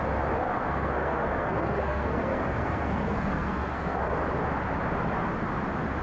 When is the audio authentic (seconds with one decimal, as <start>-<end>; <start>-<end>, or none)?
0.0-0.4; 4.0-6.0